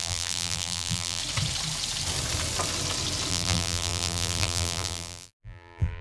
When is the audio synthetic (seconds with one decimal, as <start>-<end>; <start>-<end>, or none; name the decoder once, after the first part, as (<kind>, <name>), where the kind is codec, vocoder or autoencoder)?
0.0-1.2 (vocoder, BigVGAN v2); 3.3-6.0